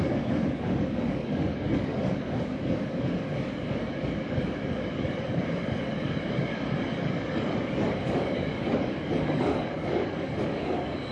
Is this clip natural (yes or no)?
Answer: no